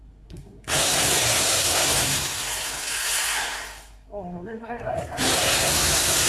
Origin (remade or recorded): remade